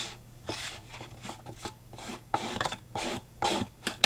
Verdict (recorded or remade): remade